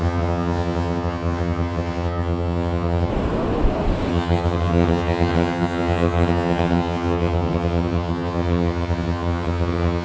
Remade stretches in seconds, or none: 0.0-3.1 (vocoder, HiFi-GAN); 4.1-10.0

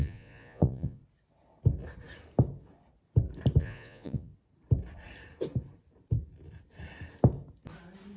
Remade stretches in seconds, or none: 0.0-1.0 (vocoder, Vocos); 3.6-4.3

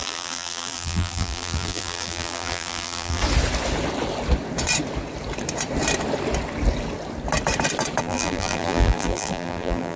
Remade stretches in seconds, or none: 0.0-3.2 (vocoder, BigVGAN v2); 8.0-10.0

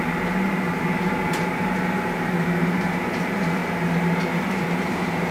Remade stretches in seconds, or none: 0.0-3.6 (vocoder, BigVGAN v2); 4.4-5.3

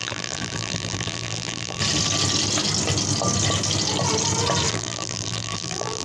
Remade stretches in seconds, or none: 0.0-1.8 (vocoder, BigVGAN v2); 4.7-6.0